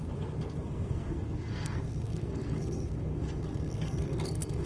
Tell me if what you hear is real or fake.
fake